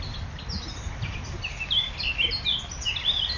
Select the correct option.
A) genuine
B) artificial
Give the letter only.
A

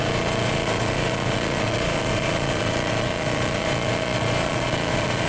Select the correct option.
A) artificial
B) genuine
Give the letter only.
A